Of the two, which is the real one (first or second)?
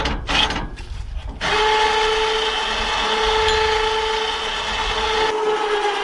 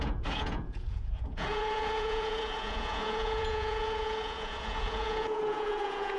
first